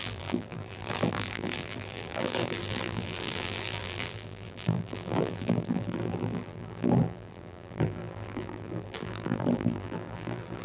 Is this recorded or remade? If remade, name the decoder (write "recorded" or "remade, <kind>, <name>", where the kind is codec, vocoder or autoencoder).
remade, vocoder, BigVGAN v2